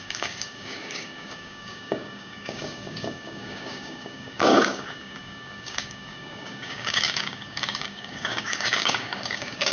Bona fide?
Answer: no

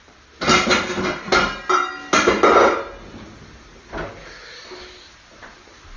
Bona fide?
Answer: yes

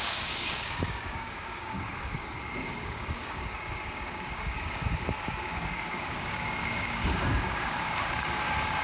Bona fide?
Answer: no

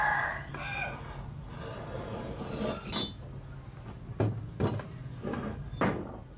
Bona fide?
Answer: yes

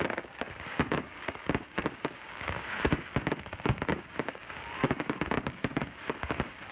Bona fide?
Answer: no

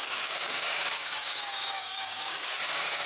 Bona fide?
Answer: no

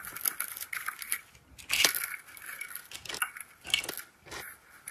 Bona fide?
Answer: yes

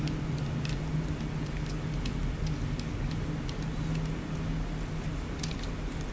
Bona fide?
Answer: yes